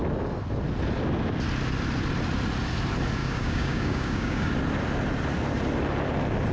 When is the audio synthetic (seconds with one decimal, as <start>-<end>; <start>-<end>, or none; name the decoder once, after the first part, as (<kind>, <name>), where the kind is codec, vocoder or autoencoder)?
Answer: 3.2-4.5 (codec, DAC)